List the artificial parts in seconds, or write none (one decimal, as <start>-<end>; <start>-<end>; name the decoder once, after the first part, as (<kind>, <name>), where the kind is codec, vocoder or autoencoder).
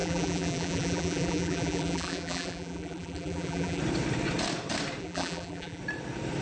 0.0-3.8 (vocoder, BigVGAN v2); 5.0-5.8